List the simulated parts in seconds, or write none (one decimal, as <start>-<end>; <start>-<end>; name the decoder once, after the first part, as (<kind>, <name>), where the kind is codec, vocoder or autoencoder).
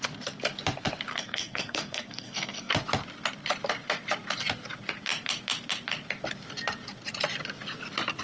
1.1-2.7 (codec, SNAC)